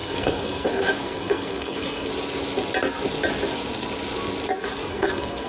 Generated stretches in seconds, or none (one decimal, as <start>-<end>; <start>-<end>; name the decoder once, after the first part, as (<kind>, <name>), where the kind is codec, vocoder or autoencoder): 0.0-2.1 (codec, SNAC); 4.9-5.5